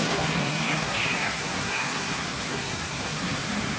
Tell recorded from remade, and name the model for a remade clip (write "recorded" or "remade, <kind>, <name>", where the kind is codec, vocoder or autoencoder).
remade, codec, SNAC